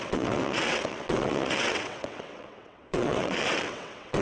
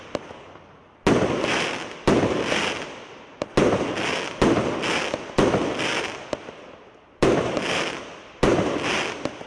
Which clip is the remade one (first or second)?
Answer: first